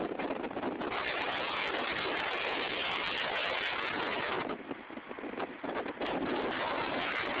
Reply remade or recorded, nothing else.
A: recorded